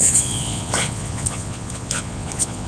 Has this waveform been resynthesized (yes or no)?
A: yes